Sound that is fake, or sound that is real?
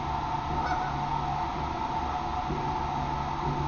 real